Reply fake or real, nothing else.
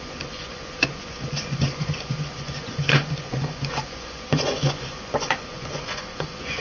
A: fake